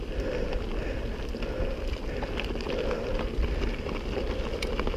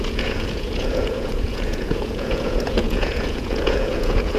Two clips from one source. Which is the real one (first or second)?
first